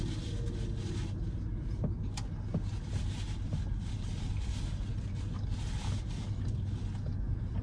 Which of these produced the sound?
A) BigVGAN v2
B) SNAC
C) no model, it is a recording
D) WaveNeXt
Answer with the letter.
C